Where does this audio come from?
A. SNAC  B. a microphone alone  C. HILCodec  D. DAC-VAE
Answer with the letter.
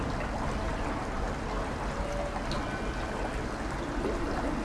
B